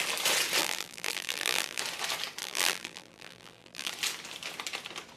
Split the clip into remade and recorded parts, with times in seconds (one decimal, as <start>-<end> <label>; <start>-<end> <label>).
0.0-0.6 recorded; 0.6-1.8 remade; 1.8-2.4 recorded; 2.4-3.9 remade; 3.9-5.2 recorded

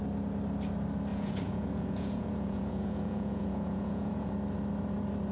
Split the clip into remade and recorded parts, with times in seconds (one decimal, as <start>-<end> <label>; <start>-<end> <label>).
0.0-1.1 recorded; 1.1-4.3 remade; 4.3-5.3 recorded